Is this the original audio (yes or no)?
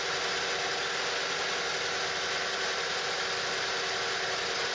yes